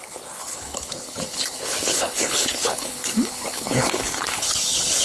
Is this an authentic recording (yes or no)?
no